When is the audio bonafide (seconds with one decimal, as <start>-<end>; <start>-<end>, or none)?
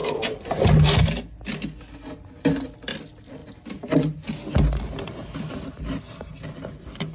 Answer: 0.0-7.1